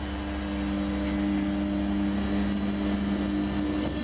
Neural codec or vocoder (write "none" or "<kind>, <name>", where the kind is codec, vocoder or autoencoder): none